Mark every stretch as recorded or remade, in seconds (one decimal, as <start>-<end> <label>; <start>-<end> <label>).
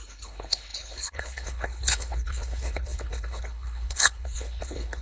0.0-5.0 remade